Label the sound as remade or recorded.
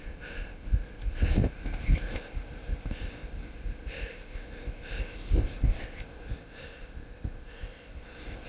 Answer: remade